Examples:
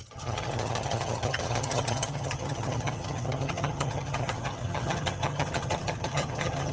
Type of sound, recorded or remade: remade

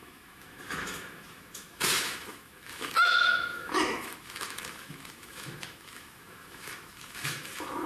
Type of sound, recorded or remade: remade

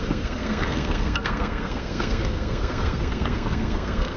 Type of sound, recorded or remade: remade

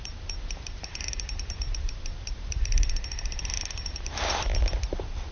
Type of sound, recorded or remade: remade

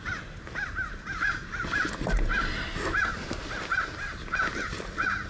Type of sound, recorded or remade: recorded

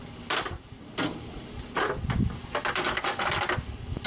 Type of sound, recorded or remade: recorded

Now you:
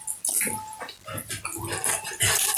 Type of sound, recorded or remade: recorded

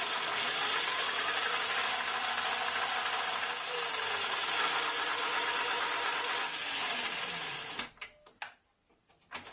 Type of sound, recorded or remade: recorded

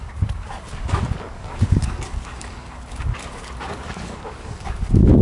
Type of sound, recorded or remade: remade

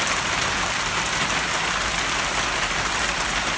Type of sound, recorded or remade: recorded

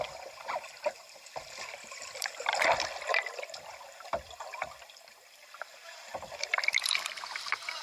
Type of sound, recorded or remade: remade